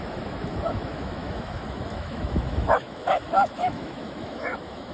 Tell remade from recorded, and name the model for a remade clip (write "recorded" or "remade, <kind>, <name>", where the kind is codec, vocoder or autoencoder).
remade, autoencoder, DAC-VAE